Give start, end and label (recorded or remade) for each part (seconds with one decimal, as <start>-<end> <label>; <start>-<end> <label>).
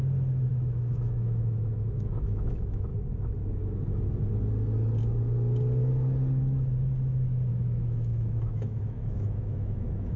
0.0-0.5 recorded; 0.5-2.9 remade; 2.9-7.5 recorded; 7.5-10.2 remade